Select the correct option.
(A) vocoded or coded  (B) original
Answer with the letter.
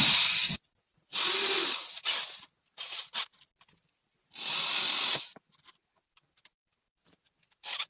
B